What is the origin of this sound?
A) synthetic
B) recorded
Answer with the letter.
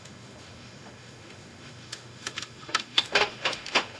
A